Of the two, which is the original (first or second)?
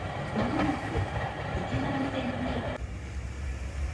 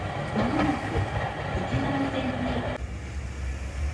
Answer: second